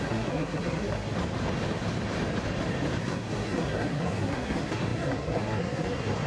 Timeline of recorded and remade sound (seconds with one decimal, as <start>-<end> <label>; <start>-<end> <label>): 0.0-1.1 remade; 1.1-3.0 recorded; 3.0-6.3 remade